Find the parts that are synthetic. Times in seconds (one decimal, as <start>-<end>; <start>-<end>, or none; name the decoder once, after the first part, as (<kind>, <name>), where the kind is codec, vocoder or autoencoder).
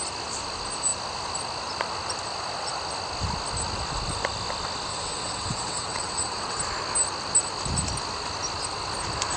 4.9-6.6 (vocoder, WaveNeXt)